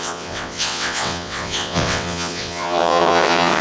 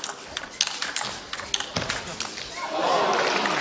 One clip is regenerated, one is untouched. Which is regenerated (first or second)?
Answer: first